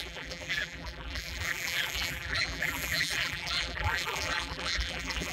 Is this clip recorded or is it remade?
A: remade